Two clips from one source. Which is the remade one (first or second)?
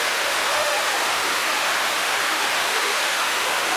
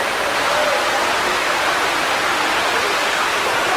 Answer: first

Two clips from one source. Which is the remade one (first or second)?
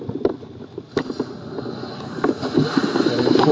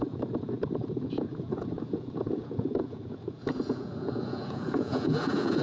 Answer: second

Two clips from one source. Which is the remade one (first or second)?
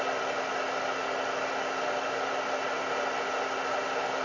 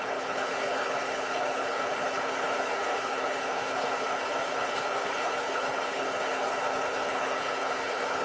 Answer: second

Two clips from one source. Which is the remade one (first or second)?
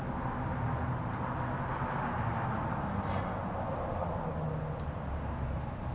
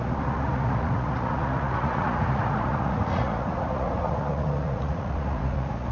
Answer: second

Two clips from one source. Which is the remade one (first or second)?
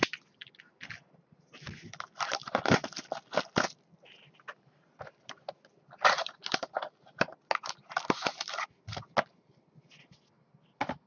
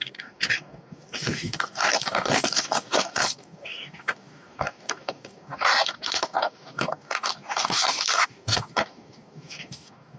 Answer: second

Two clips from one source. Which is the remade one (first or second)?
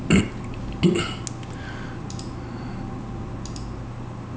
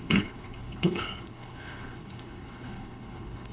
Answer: second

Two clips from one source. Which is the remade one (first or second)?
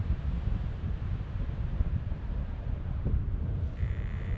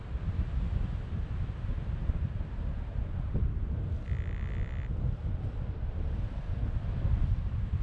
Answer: first